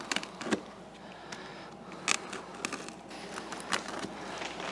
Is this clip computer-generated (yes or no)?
no